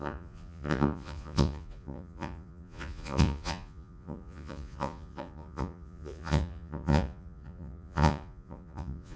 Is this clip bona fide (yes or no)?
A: no